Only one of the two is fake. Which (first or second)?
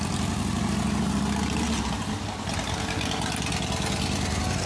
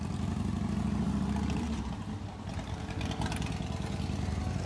second